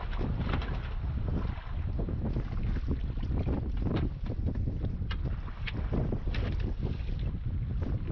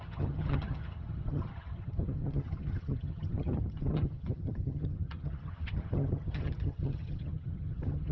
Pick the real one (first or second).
first